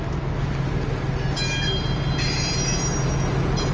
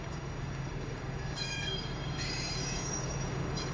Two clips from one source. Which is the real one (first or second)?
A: first